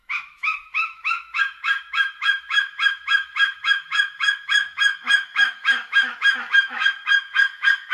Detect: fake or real fake